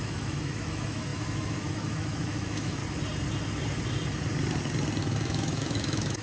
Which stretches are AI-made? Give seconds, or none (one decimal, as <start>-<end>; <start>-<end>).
0.0-2.8; 5.0-6.2

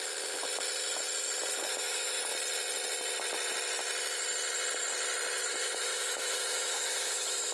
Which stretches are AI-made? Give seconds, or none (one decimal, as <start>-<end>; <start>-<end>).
1.7-2.3; 5.4-7.5

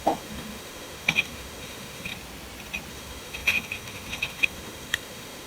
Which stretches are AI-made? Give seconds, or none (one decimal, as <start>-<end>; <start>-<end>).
0.0-2.1; 2.9-5.5

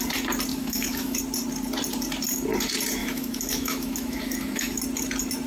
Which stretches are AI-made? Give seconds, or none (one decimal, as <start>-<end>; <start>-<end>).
0.5-1.2; 3.0-4.8

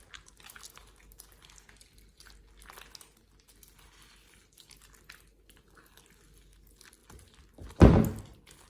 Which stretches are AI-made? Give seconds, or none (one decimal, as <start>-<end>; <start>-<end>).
none

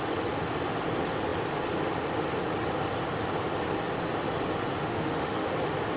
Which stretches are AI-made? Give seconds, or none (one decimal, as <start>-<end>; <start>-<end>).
4.8-5.5

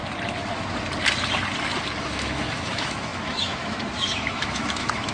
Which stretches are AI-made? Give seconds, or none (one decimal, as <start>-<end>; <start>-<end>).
2.0-5.1

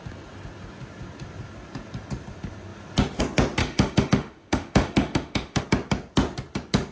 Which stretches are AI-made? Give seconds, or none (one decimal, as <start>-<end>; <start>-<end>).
3.6-5.6